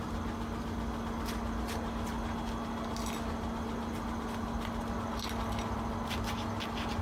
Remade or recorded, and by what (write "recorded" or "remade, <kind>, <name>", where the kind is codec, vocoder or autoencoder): recorded